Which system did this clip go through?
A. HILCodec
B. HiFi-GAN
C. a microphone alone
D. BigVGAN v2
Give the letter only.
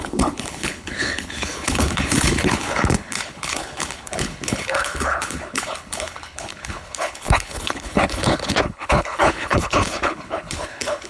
A